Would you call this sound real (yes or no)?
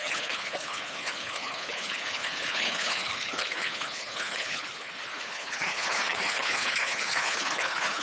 no